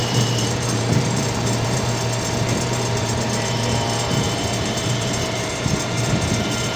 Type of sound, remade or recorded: remade